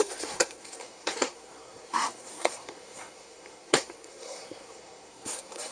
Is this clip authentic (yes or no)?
no